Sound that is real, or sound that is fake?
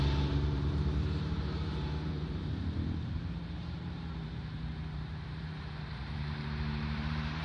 fake